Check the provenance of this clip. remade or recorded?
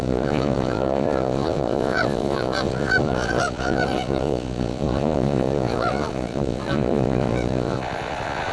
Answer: remade